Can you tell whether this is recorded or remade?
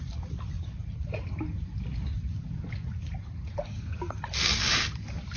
recorded